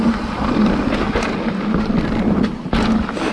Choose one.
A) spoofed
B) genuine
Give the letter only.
B